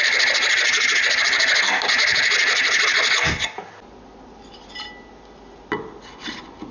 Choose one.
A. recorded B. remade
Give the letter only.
A